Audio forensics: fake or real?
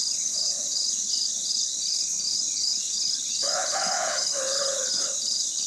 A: fake